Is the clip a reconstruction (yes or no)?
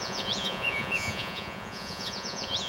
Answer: yes